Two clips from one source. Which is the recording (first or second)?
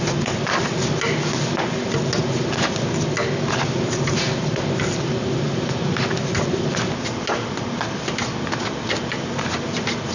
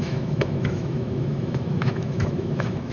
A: first